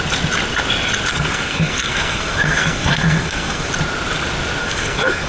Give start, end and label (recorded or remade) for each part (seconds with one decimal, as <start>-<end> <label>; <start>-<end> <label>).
0.0-1.1 recorded; 1.1-3.7 remade; 3.7-4.6 recorded; 4.6-5.3 remade